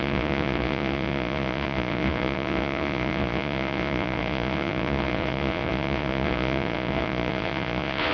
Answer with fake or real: fake